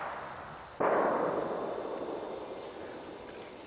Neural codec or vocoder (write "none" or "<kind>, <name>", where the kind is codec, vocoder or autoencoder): none